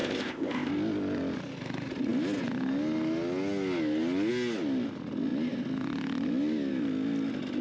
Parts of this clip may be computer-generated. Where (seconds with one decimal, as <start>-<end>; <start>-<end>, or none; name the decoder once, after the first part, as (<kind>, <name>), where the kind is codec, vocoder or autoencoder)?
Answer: 0.0-0.7 (codec, ZipCodec)